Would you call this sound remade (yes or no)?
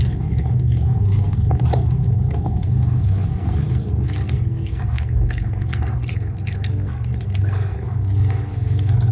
yes